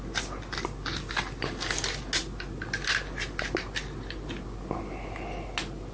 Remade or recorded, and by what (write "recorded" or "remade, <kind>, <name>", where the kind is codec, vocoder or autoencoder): recorded